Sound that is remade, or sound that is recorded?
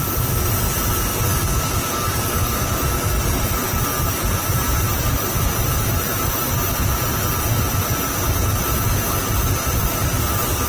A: remade